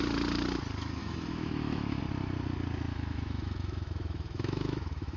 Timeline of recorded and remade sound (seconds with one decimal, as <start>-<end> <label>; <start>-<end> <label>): 0.0-1.0 recorded; 1.0-2.0 remade; 2.0-2.9 recorded; 2.9-5.2 remade